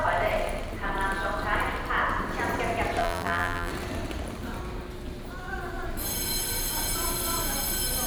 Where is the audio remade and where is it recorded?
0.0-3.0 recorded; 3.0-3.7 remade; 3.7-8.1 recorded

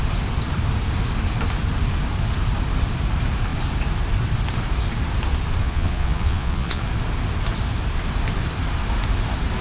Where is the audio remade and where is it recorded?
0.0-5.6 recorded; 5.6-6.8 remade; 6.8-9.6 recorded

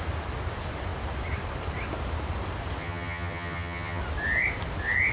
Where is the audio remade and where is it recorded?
0.0-2.8 recorded; 2.8-4.0 remade; 4.0-5.1 recorded

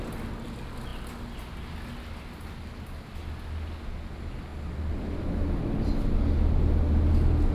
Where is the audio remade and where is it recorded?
0.0-7.5 recorded